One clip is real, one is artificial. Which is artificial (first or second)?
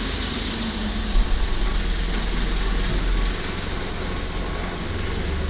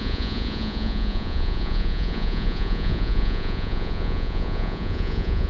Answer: second